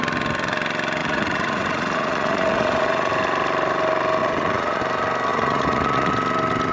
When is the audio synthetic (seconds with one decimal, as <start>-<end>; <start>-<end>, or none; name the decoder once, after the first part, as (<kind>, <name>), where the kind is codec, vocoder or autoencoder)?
1.0-3.1 (vocoder, Vocos); 4.2-4.8; 5.3-6.1